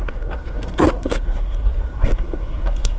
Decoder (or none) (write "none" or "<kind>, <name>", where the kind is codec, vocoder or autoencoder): codec, SNAC